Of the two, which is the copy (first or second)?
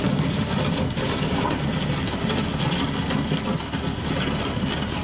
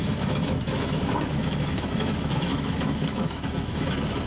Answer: second